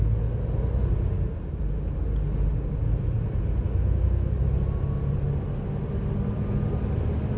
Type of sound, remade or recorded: recorded